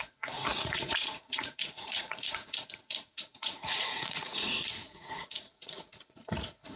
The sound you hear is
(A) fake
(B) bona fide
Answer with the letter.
A